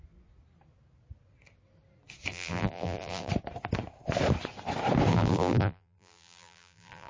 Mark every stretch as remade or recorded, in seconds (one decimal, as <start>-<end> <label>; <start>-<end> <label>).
0.0-2.3 recorded; 2.3-3.3 remade; 3.3-5.1 recorded; 5.1-7.1 remade